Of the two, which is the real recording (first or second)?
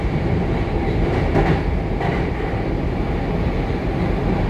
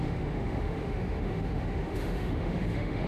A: first